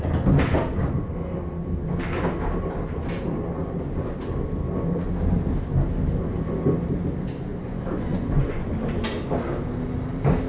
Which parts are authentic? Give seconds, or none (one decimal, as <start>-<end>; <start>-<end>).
0.0-7.5; 8.7-10.5